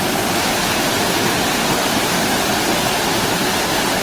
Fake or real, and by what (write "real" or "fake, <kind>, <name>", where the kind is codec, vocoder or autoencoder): real